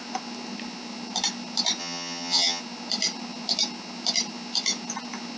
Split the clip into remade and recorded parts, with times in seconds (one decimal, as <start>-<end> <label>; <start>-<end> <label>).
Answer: 0.0-1.8 recorded; 1.8-2.6 remade; 2.6-5.4 recorded